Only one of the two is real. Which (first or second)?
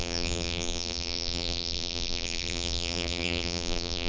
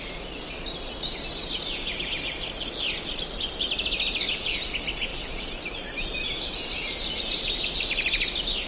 second